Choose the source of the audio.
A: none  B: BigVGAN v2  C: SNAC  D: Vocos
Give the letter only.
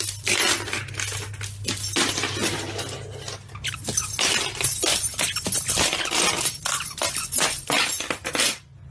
A